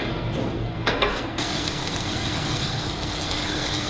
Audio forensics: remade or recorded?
remade